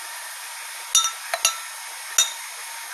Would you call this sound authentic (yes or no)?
yes